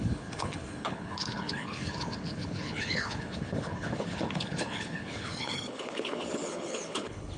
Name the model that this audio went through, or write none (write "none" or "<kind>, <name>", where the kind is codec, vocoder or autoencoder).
codec, HILCodec